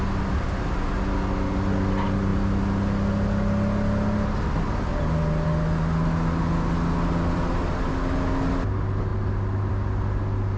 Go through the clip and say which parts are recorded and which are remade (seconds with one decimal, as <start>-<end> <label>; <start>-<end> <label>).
0.0-10.6 recorded